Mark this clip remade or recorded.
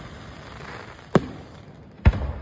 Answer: remade